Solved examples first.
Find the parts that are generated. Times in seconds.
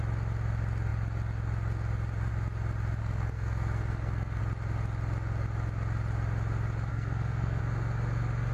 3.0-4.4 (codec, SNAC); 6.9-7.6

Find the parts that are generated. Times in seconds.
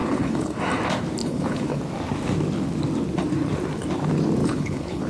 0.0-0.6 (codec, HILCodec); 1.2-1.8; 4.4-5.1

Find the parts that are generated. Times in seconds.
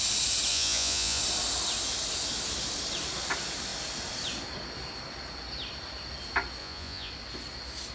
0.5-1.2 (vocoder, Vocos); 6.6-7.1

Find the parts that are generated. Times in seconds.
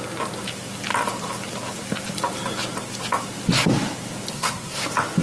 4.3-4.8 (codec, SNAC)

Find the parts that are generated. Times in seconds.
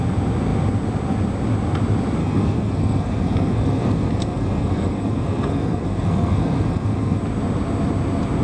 2.2-7.2 (codec, SNAC)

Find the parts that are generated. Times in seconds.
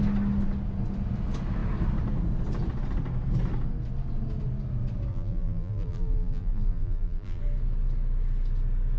5.1-7.4 (vocoder, BigVGAN v2)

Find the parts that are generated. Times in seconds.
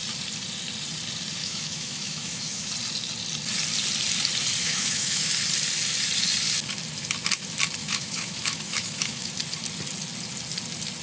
1.4-2.7 (autoencoder, DAC-VAE); 4.6-5.3; 7.8-9.3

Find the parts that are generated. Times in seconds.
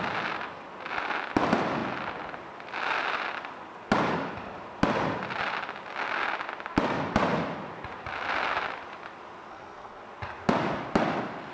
9.5-10.0 (codec, SNAC)